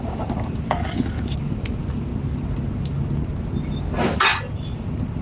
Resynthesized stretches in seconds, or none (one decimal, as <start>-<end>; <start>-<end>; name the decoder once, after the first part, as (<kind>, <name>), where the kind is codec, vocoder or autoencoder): none